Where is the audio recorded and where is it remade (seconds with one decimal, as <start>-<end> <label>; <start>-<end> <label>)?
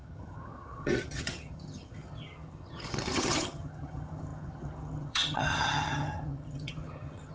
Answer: 0.0-7.3 remade